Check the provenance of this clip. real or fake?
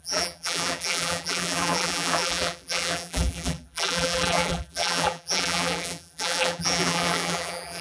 fake